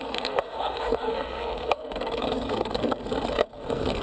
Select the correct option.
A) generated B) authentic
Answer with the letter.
A